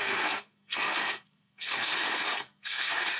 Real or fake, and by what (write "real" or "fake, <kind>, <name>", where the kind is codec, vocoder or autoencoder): fake, codec, SNAC